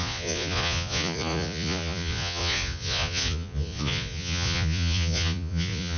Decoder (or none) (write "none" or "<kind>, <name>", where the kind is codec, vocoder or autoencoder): vocoder, Vocos